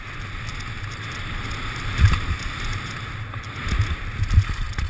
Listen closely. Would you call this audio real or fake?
real